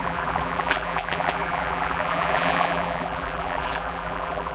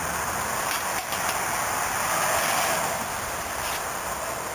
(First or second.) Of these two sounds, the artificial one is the first